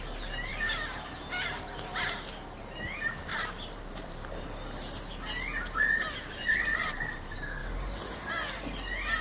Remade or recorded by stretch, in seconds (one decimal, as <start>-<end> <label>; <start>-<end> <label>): 0.0-3.3 recorded; 3.3-4.4 remade; 4.4-9.2 recorded